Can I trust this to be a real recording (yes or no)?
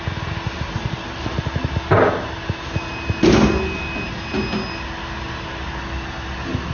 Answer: yes